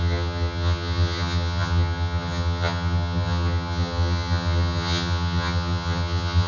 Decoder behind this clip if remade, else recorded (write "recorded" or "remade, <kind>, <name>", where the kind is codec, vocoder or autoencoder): remade, vocoder, HiFi-GAN